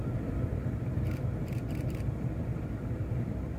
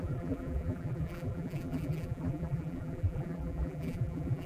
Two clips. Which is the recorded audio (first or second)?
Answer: first